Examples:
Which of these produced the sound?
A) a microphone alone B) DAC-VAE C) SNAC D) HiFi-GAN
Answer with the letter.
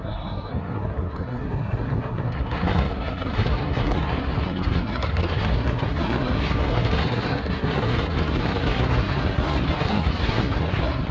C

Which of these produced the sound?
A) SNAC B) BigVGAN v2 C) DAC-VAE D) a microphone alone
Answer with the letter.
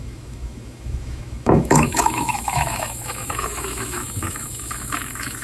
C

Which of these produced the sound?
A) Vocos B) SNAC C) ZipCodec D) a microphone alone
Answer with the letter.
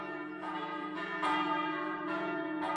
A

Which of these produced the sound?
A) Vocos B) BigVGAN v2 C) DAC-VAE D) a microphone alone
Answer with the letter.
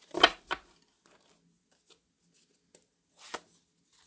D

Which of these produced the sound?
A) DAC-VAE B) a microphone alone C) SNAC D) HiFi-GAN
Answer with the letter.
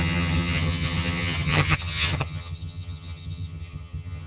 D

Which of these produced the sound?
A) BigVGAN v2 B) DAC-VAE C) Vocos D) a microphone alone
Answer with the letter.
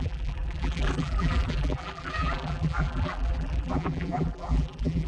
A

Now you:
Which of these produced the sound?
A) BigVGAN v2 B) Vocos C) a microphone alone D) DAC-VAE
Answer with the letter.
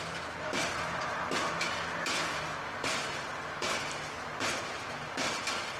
C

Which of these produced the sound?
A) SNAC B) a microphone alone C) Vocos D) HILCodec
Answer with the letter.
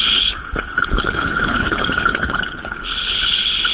D